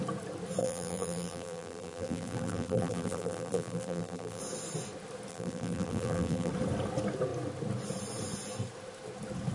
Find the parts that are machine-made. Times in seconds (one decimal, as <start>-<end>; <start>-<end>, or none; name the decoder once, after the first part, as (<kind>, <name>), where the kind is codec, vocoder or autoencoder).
0.6-4.4 (vocoder, BigVGAN v2); 5.3-6.5